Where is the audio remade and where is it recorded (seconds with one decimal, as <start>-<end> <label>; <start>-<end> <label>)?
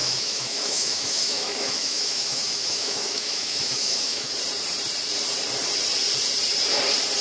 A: 0.0-4.3 remade; 4.3-7.2 recorded